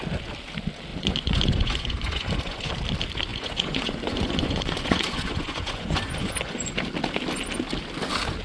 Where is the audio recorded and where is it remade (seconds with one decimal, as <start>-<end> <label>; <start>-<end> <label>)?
0.0-0.9 recorded; 0.9-2.7 remade; 2.7-3.3 recorded; 3.3-6.7 remade; 6.7-8.4 recorded